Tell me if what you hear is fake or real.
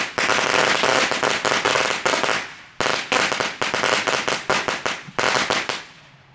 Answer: real